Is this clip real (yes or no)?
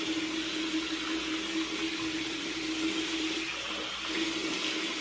yes